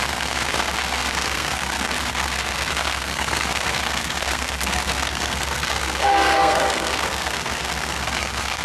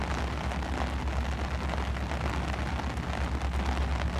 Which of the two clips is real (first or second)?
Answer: second